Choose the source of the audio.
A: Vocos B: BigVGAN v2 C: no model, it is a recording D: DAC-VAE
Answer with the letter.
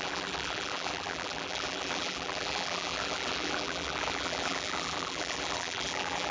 B